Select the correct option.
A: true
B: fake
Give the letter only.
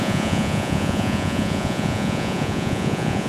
B